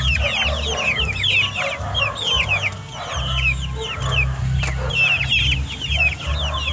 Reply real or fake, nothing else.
real